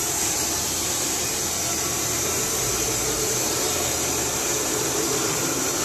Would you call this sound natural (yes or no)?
no